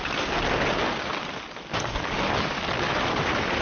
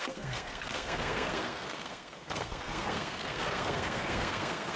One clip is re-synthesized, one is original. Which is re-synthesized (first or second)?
second